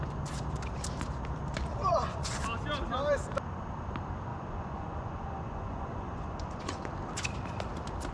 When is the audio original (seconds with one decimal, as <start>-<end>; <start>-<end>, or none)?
0.0-1.7; 2.4-4.3; 6.9-8.1